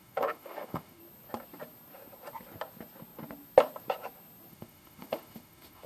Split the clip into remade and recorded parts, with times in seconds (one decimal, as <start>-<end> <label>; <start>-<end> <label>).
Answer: 0.0-1.0 remade; 1.0-4.5 recorded; 4.5-5.9 remade